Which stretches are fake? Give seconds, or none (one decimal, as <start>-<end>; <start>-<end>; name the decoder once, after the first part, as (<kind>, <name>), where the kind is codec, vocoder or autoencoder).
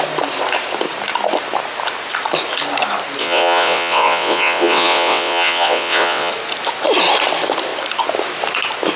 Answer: 3.2-6.3 (vocoder, WaveNeXt)